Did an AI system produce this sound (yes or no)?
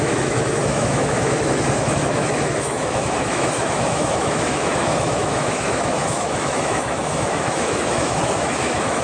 yes